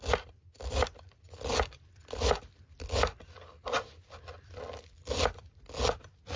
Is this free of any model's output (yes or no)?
yes